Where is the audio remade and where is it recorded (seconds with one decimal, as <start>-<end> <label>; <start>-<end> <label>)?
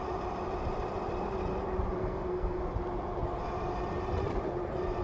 0.0-2.0 recorded; 2.0-2.6 remade; 2.6-5.0 recorded